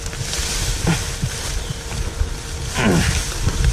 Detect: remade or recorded recorded